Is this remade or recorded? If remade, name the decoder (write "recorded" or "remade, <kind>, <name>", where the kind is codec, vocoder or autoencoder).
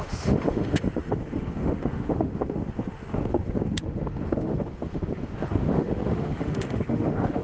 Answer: remade, autoencoder, DAC-VAE